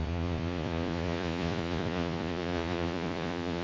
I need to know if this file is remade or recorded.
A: remade